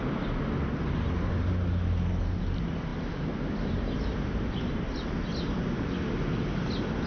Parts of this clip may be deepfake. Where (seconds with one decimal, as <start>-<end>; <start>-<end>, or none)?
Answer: none